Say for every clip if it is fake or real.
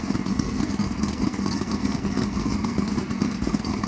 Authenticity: fake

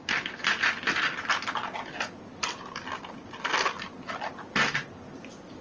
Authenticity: real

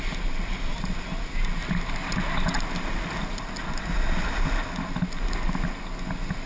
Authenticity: real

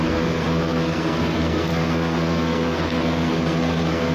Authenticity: fake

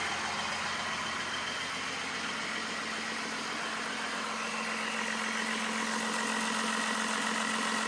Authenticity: real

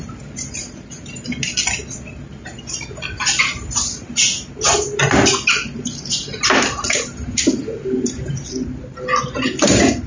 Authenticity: real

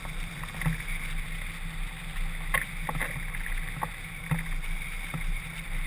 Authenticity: real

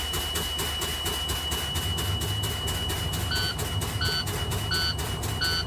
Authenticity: real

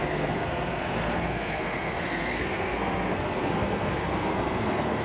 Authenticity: fake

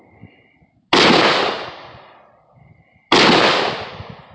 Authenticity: real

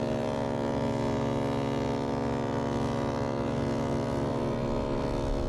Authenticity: real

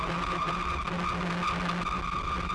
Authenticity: real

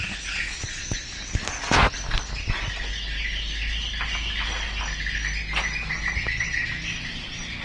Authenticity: real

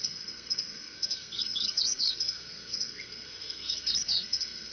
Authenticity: fake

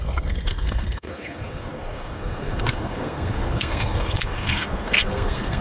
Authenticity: fake